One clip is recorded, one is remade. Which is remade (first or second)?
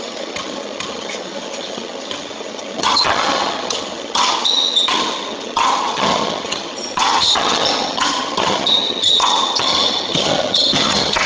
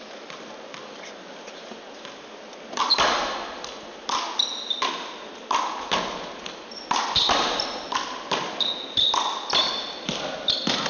first